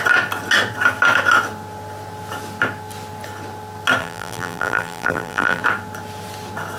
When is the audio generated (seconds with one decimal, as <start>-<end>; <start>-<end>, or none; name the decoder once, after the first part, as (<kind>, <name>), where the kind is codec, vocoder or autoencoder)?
4.0-5.6 (vocoder, BigVGAN v2)